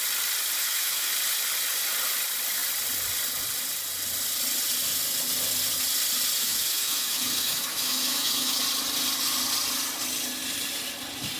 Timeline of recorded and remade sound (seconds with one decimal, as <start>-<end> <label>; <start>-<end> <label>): 0.0-0.6 recorded; 0.6-1.1 remade; 1.1-6.4 recorded; 6.4-8.6 remade; 8.6-11.4 recorded